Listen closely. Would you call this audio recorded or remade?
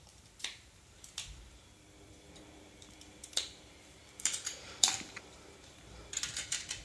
remade